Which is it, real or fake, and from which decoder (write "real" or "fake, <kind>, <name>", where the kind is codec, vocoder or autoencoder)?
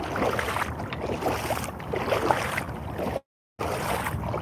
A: real